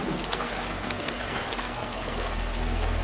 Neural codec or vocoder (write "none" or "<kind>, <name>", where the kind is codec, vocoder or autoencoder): codec, SNAC